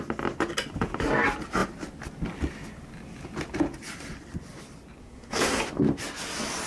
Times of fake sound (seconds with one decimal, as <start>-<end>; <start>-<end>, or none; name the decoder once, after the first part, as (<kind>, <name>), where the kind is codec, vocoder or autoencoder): 5.0-5.6 (codec, SNAC)